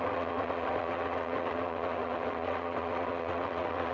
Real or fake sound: fake